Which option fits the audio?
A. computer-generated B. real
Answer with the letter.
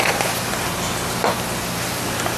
B